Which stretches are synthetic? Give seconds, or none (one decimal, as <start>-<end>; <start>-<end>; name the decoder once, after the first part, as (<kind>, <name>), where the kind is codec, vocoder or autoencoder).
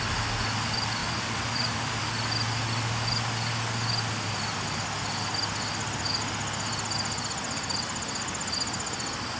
1.0-2.0 (vocoder, BigVGAN v2)